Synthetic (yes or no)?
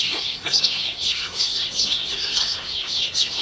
yes